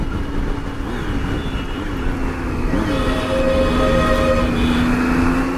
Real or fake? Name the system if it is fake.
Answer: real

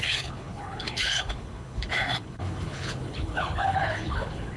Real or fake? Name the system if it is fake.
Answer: fake, codec, HILCodec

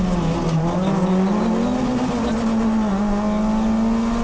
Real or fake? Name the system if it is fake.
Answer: real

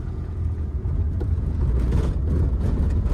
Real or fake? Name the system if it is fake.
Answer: fake, vocoder, Vocos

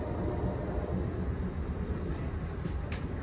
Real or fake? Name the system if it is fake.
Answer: real